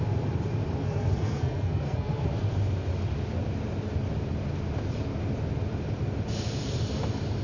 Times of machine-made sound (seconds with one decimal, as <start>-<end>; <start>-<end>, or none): 0.8-2.3